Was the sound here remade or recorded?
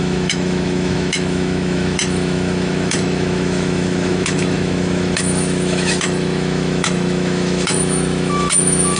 remade